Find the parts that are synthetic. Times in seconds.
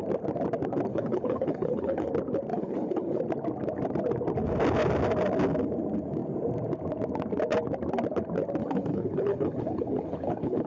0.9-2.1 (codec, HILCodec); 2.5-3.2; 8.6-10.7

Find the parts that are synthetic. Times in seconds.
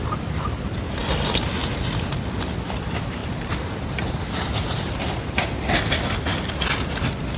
3.2-5.6 (vocoder, BigVGAN v2)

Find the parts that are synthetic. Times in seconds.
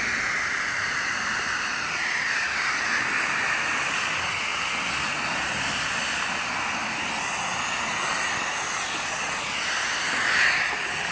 none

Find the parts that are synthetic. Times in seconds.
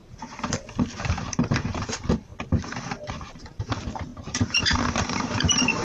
0.0-2.3 (vocoder, BigVGAN v2); 3.3-5.8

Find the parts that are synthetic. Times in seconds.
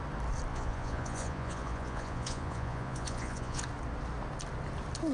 0.5-3.6 (vocoder, Vocos)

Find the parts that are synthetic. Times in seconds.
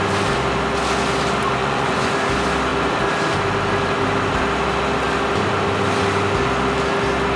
1.6-2.1 (vocoder, Vocos)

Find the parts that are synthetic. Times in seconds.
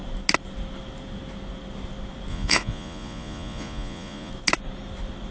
2.3-4.3 (vocoder, Vocos)